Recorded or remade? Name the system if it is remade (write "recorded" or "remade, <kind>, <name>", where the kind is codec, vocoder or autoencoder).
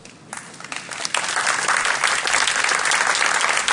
recorded